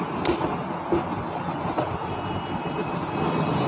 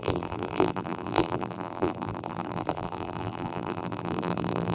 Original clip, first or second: first